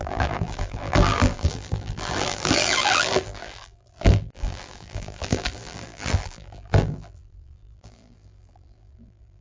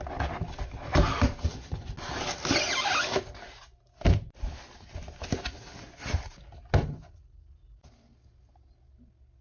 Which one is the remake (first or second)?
first